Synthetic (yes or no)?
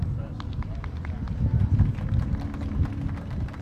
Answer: no